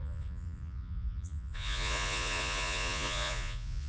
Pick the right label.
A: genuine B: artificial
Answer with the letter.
B